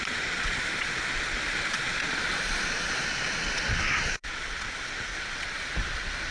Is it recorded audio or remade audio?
remade